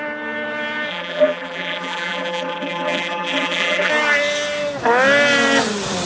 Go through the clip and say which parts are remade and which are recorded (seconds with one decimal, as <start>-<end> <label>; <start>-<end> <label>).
0.0-0.9 recorded; 0.9-3.9 remade; 3.9-6.1 recorded